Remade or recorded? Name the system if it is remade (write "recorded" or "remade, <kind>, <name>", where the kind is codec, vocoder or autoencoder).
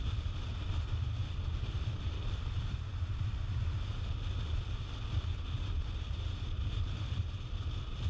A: recorded